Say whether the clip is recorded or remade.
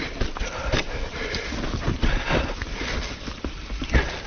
recorded